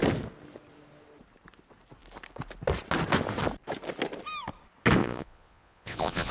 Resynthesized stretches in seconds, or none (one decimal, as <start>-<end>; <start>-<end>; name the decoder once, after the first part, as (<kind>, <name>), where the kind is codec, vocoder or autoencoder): 5.0-6.3 (vocoder, Vocos)